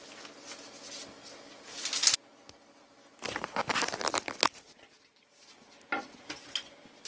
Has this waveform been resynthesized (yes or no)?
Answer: no